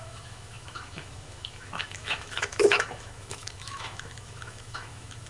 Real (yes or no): no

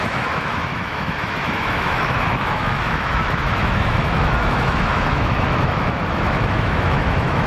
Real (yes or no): no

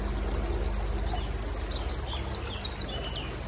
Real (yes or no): yes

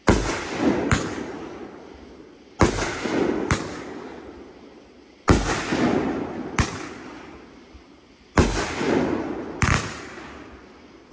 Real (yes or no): yes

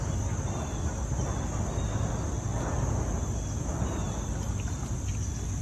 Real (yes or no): yes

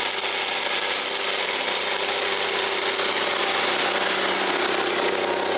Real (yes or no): yes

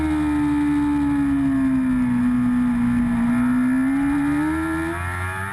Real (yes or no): yes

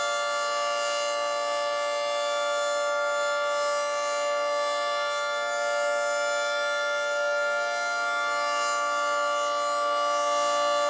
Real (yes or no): yes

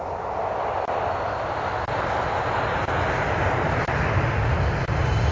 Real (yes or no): yes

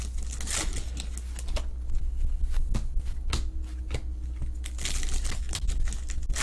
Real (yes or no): yes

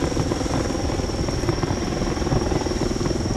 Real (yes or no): yes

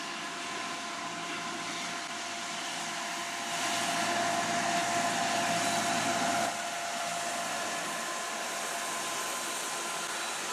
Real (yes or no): yes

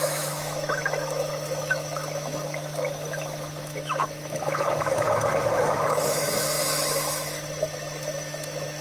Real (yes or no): no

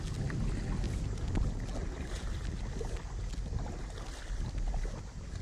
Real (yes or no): yes